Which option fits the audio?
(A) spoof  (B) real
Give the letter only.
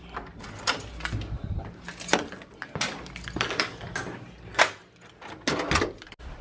B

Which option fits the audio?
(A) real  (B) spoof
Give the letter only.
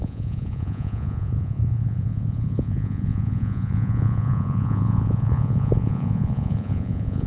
B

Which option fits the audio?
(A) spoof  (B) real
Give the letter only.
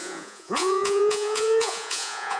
A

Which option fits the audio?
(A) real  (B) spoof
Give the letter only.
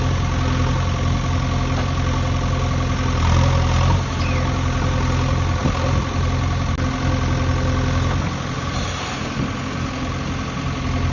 A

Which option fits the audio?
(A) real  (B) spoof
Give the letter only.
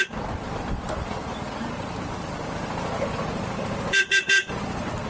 A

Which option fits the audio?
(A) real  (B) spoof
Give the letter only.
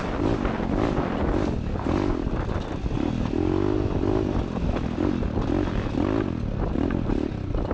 A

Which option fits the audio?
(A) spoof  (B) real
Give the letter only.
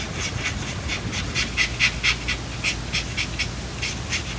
B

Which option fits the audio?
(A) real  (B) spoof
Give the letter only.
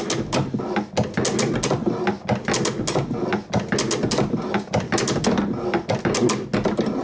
A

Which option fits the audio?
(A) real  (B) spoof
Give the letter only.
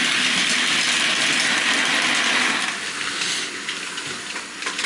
A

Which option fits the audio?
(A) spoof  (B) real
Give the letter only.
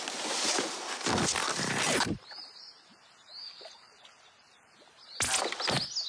B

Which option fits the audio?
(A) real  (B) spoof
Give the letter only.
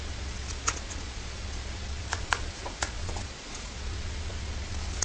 B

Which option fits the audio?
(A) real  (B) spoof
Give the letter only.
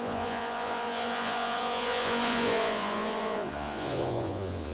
B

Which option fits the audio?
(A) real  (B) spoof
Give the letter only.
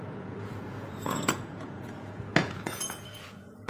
B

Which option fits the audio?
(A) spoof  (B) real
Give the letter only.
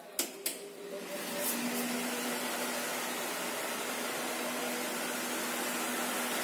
B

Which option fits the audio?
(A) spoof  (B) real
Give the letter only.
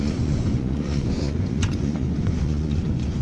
A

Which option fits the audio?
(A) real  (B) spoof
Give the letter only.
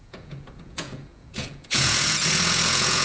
B